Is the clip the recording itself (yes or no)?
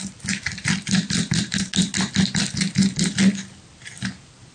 yes